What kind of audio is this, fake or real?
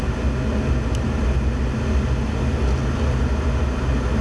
real